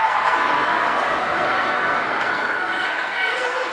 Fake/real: fake